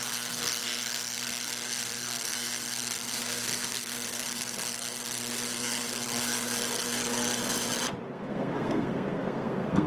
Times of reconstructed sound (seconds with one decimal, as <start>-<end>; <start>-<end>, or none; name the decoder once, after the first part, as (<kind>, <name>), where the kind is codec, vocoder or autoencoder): 0.0-7.4 (codec, SNAC); 8.0-9.9